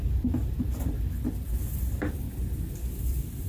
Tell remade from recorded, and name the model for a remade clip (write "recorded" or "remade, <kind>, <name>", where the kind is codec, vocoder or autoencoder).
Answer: recorded